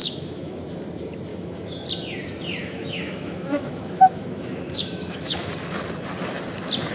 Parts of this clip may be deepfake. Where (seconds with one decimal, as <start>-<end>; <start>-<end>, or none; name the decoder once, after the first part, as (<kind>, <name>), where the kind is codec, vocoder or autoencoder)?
0.0-0.6 (autoencoder, DAC-VAE); 1.3-1.8; 2.6-5.5